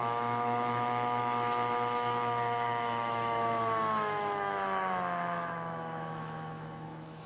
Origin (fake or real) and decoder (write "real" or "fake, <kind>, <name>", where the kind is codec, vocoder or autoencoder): fake, autoencoder, DAC-VAE